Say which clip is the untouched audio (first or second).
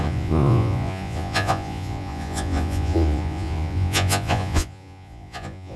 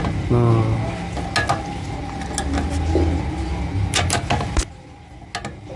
second